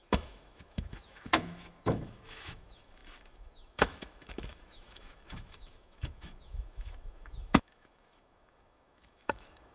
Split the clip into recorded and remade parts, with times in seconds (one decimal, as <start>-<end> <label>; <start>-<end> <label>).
0.0-9.7 remade